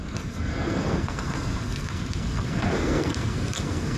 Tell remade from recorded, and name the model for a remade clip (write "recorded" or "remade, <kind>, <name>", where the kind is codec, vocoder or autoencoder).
remade, codec, SNAC